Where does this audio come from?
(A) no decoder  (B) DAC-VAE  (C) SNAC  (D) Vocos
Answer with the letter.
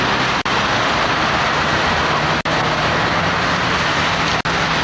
A